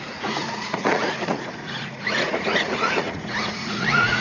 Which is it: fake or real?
fake